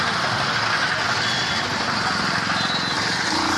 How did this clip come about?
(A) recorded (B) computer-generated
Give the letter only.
A